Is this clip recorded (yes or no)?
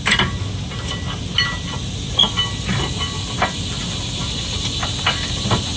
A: yes